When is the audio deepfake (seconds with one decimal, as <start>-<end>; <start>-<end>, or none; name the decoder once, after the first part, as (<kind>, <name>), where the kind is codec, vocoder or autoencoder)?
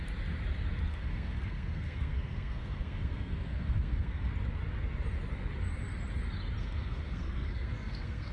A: 0.9-4.3 (codec, SNAC); 6.6-8.3